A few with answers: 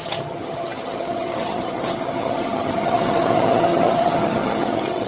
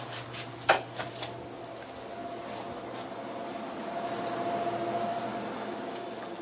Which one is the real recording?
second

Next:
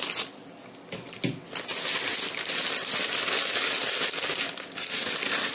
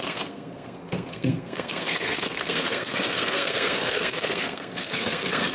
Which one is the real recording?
first